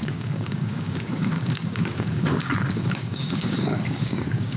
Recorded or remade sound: remade